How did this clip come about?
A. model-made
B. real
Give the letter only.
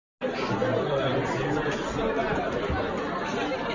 B